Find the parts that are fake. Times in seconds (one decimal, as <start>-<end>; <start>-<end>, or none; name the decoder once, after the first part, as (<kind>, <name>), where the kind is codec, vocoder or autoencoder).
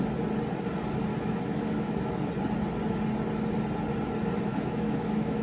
1.1-2.3 (autoencoder, DAC-VAE); 4.5-5.4